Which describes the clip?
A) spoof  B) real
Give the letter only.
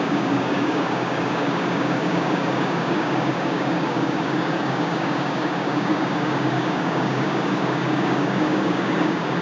A